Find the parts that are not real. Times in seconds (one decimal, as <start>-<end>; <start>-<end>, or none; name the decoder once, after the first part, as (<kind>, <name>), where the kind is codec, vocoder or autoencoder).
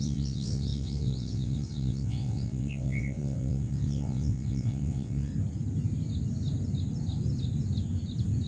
0.0-5.3 (vocoder, WaveNeXt)